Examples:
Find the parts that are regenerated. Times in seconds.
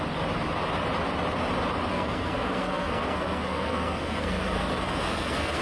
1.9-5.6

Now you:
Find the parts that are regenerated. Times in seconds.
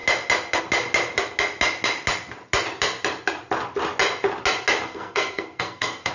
4.9-6.1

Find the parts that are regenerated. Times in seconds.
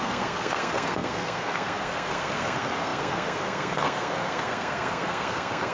0.0-5.7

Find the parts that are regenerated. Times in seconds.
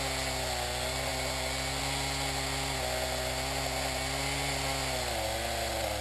none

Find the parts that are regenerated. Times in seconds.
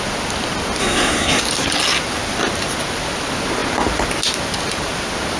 0.8-1.4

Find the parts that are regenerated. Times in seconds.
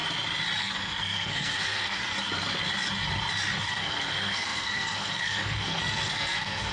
0.6-2.0; 3.7-6.7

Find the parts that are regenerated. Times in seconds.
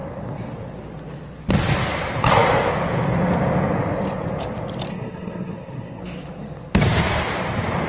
4.9-6.0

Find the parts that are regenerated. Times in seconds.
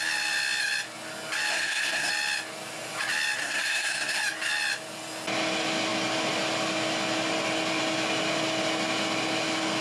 1.5-2.1; 3.4-4.2